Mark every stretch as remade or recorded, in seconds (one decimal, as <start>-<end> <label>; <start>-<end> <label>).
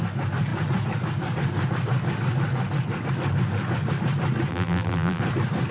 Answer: 0.0-4.5 recorded; 4.5-5.2 remade; 5.2-5.7 recorded